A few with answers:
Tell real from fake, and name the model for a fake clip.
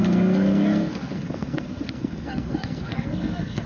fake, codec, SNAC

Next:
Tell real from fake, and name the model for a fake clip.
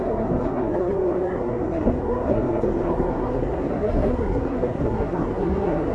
fake, codec, SNAC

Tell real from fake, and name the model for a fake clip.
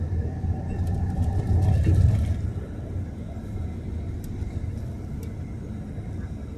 real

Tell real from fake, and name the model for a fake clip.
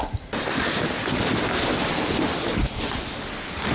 real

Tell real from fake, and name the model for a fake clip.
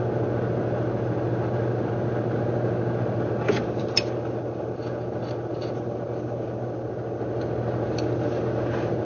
real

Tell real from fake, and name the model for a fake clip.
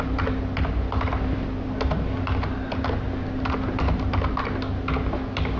real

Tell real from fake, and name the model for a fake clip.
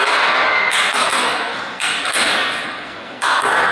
fake, codec, SNAC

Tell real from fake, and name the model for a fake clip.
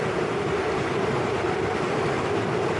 real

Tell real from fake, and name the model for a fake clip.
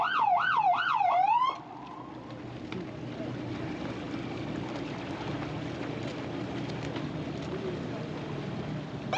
real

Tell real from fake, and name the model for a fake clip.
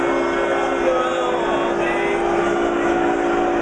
real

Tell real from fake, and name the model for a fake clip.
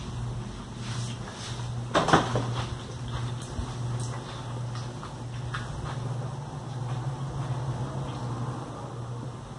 real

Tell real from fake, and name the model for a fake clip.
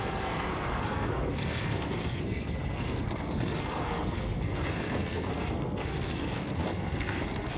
fake, codec, SNAC